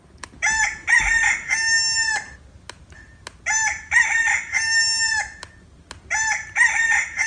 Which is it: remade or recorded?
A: recorded